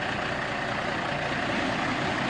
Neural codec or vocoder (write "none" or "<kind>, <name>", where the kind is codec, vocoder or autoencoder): none